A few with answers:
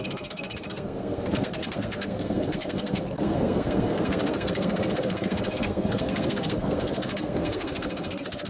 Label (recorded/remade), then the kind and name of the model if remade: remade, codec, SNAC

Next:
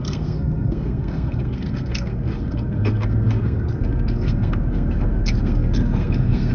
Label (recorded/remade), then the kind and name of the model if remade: remade, codec, SNAC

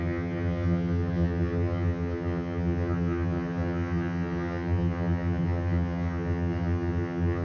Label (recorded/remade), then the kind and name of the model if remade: remade, vocoder, HiFi-GAN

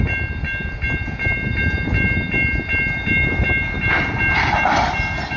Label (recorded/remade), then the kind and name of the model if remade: recorded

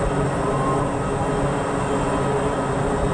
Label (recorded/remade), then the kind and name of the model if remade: recorded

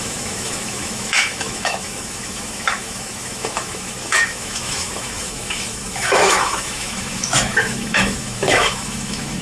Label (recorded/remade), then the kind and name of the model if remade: remade, autoencoder, DAC-VAE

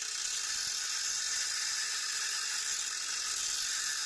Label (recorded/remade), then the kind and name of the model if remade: recorded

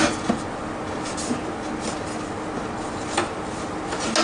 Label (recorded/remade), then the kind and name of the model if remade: recorded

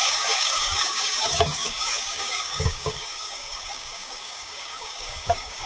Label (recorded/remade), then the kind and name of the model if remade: remade, codec, DAC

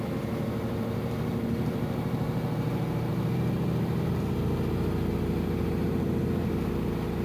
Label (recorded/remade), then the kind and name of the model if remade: remade, vocoder, BigVGAN v2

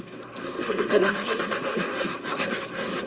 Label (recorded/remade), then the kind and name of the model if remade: remade, codec, SNAC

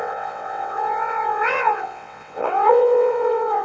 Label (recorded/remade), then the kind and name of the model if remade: remade, vocoder, WaveNeXt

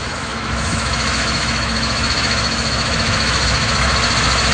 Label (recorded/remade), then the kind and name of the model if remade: remade, autoencoder, DAC-VAE